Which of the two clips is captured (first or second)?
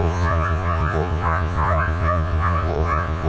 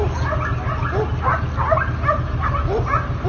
second